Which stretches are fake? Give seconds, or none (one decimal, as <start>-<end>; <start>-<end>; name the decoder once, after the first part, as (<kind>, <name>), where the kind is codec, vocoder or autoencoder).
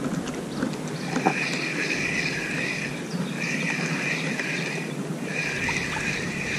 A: none